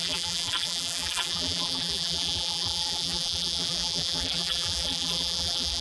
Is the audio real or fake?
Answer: fake